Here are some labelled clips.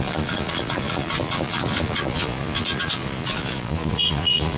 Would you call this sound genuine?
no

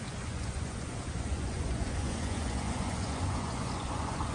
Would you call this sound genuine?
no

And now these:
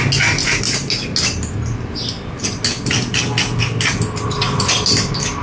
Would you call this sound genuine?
yes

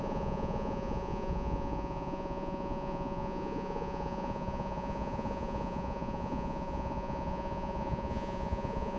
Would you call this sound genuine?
no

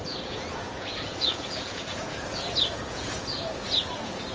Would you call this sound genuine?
no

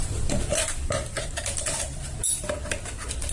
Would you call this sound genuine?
yes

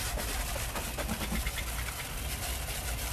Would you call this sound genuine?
yes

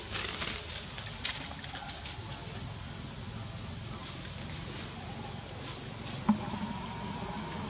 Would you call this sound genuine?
yes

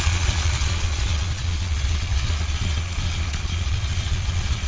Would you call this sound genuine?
no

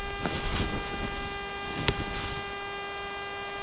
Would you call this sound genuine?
yes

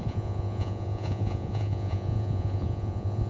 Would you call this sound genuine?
no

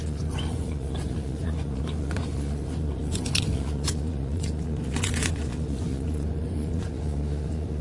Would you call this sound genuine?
no